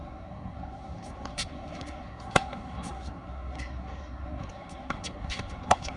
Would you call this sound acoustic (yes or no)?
no